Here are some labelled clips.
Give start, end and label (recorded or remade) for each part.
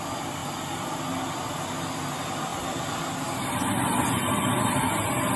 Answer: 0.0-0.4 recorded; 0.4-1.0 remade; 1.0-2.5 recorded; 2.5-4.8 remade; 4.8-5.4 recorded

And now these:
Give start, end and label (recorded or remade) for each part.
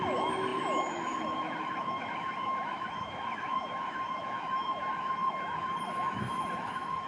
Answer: 0.0-7.1 remade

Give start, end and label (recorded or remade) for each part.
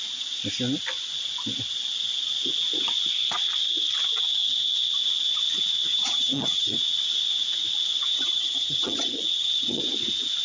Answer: 0.0-5.9 recorded; 5.9-6.8 remade; 6.8-8.1 recorded; 8.1-9.8 remade; 9.8-10.4 recorded